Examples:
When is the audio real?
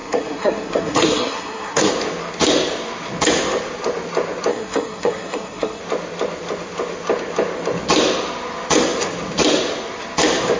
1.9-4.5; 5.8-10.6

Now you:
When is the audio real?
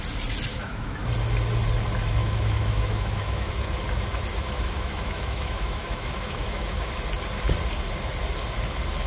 0.0-0.5; 1.0-2.2; 3.5-4.3; 6.9-9.1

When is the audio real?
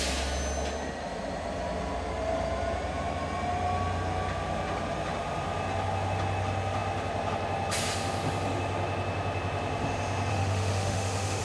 0.0-10.3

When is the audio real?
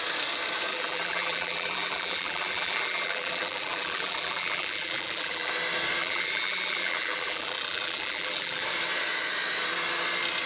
0.0-0.7; 5.5-6.0; 8.6-10.5